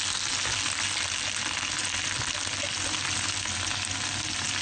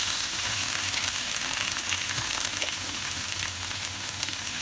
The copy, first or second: second